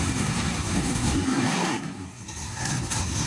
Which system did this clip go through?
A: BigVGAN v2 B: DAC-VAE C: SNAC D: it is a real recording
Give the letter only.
C